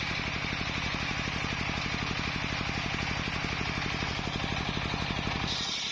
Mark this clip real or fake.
real